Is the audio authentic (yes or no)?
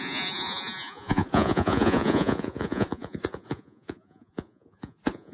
no